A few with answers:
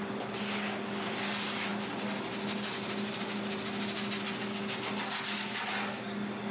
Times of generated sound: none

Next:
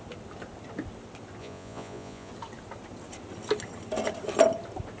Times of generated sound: 1.4-2.3 (vocoder, Vocos)

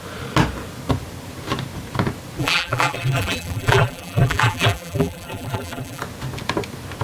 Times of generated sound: 2.4-6.0 (vocoder, BigVGAN v2)

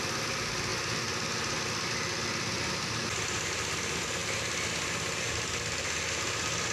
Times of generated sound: none